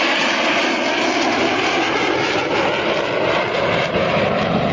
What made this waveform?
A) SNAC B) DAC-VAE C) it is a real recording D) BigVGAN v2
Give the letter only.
C